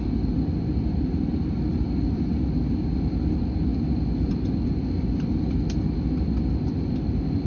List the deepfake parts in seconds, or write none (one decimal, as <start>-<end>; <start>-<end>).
none